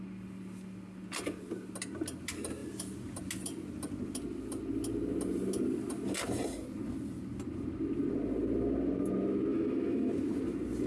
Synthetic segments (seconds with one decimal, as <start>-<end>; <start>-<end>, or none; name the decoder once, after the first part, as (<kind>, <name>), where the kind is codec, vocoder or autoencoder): 9.5-10.1 (autoencoder, DAC-VAE)